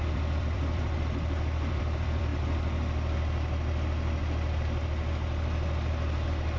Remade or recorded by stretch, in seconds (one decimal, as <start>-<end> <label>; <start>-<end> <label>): 0.0-2.3 remade; 2.3-6.6 recorded